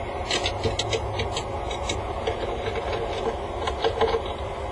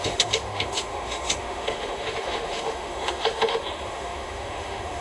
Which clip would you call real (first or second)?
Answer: first